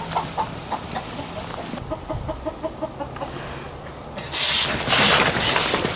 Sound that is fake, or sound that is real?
real